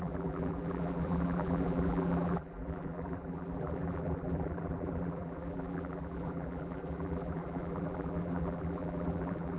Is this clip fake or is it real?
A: fake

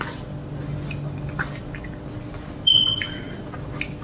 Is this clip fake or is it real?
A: real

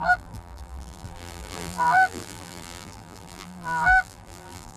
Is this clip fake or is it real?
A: fake